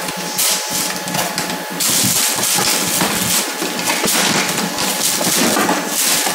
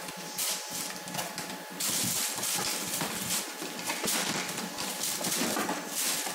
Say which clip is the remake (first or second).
second